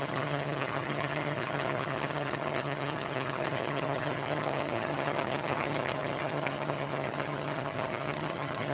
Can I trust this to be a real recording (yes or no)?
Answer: no